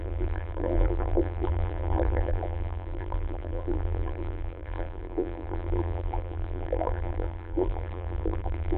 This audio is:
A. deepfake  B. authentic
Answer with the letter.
A